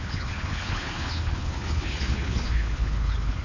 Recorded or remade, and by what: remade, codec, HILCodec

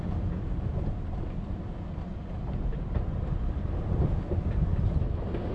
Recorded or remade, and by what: recorded